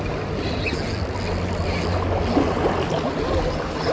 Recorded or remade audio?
recorded